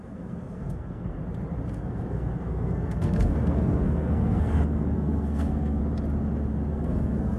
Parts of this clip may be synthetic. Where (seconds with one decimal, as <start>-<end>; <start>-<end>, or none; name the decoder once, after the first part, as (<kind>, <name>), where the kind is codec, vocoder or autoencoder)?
0.0-1.2 (codec, SNAC); 1.7-5.8; 6.7-7.4